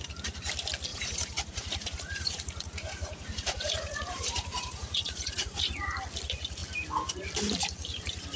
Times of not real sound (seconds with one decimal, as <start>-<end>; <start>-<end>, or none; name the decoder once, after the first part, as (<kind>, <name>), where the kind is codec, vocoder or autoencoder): 0.9-5.6 (vocoder, Vocos)